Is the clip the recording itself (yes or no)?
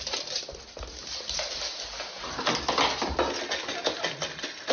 yes